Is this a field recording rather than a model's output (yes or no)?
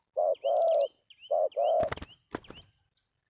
yes